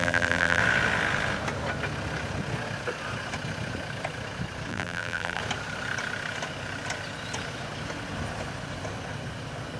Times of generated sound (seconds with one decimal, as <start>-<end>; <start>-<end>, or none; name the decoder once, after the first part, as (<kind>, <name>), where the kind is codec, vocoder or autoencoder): 0.0-0.6 (vocoder, BigVGAN v2); 4.7-5.4